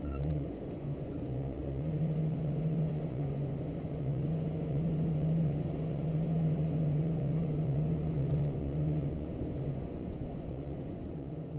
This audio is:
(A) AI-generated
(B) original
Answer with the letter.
A